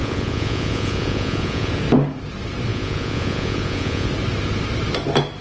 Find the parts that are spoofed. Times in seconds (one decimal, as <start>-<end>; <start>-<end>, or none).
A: 0.0-1.7; 2.7-4.1